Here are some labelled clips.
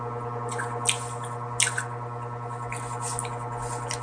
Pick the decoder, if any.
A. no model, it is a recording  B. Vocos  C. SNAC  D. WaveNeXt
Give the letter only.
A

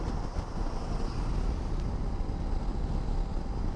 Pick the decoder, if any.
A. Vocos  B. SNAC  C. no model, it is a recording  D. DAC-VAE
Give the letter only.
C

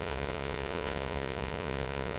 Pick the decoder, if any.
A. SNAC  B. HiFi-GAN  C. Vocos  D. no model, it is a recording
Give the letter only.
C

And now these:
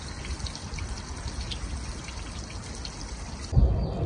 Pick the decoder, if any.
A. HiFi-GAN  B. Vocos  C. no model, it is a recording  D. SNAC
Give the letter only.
C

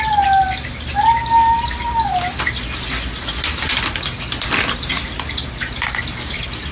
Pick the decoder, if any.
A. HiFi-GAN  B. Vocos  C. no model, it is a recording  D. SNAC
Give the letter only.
C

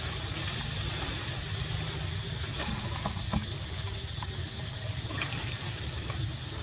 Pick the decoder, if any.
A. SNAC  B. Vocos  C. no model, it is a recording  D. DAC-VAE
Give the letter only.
C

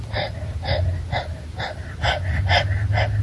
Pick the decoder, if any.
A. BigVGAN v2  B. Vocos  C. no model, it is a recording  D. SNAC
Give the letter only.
C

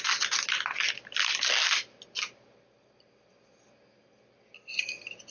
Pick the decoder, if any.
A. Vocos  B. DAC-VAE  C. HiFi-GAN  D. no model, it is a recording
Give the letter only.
D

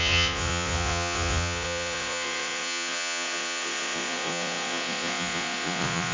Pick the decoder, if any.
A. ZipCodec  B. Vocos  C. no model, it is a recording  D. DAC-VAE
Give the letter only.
B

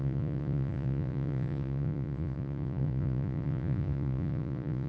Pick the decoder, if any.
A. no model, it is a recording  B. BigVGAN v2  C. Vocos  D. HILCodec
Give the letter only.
C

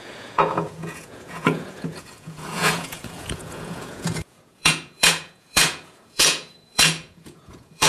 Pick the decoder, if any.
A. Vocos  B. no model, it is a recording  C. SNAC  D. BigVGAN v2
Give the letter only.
A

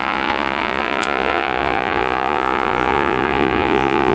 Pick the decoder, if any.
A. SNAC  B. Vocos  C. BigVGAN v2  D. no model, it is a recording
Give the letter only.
B